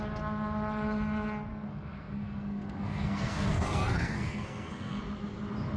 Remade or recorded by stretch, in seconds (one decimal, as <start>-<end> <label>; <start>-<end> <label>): 0.0-1.5 recorded; 1.5-5.0 remade; 5.0-5.8 recorded